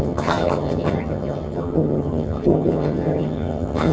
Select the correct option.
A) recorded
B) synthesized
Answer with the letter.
B